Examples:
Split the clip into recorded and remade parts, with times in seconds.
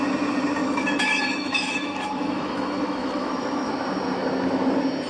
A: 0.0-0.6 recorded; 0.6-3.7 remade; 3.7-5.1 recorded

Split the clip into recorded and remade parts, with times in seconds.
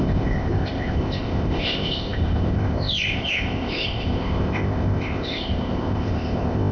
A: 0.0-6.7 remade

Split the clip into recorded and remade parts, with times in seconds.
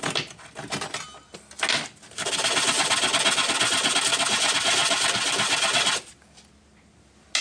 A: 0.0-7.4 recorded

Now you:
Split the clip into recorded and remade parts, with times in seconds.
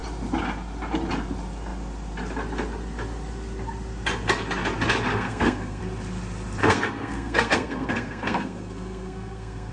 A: 0.0-5.1 recorded; 5.1-5.8 remade; 5.8-6.6 recorded; 6.6-9.7 remade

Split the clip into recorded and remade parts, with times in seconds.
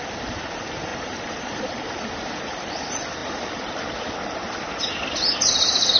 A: 0.0-0.9 recorded; 0.9-2.7 remade; 2.7-6.0 recorded